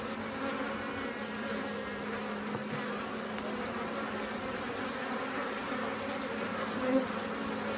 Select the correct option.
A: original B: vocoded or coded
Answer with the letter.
A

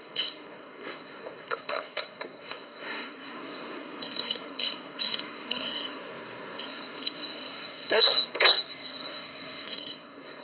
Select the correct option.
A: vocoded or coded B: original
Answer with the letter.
A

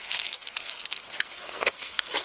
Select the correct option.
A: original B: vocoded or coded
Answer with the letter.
B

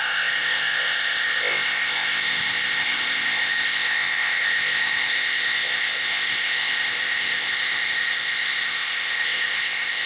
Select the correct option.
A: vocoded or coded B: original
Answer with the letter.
A